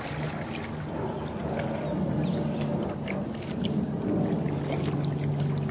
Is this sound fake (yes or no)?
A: no